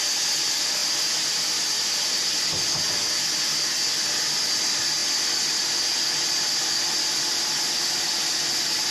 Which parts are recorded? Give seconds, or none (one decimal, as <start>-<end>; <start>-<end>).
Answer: 0.0-8.9